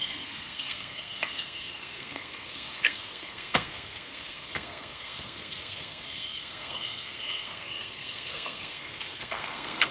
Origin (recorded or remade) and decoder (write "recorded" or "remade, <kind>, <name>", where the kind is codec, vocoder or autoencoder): remade, codec, SNAC